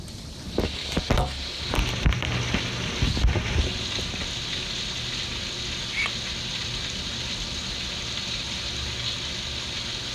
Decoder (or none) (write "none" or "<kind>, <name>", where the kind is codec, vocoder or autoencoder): none